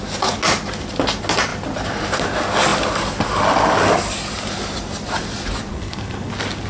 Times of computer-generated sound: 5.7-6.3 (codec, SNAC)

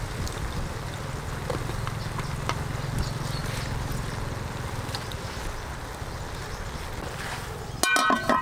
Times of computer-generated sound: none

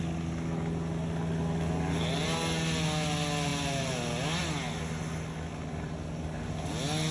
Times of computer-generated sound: none

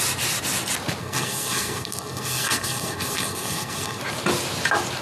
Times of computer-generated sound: 1.0-4.0 (codec, SNAC)